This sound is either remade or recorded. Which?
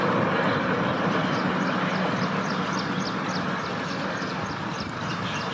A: recorded